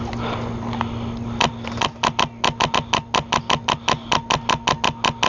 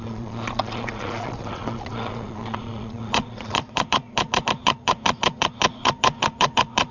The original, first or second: first